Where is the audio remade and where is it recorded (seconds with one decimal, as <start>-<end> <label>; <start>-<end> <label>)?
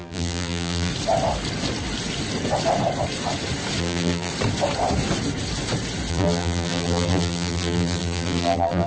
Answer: 0.0-0.9 remade; 0.9-3.8 recorded; 3.8-4.3 remade; 4.3-6.1 recorded; 6.1-8.9 remade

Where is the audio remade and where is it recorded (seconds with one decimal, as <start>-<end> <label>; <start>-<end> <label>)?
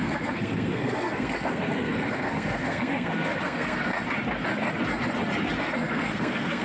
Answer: 0.0-3.8 remade; 3.8-5.6 recorded; 5.6-6.6 remade